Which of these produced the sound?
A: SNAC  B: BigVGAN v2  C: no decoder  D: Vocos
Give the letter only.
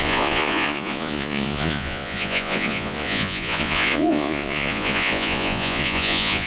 D